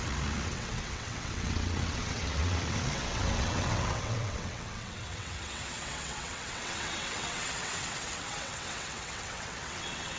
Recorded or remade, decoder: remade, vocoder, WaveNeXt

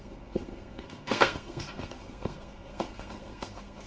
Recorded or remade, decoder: remade, codec, SNAC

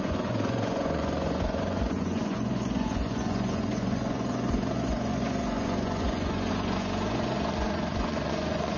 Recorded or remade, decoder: remade, vocoder, Vocos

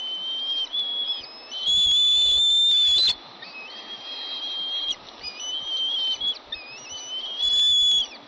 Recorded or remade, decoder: recorded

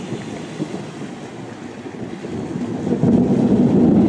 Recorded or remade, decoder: recorded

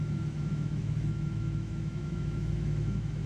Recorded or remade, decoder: remade, autoencoder, DAC-VAE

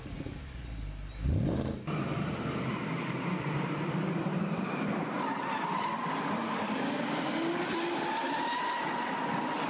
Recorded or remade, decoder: recorded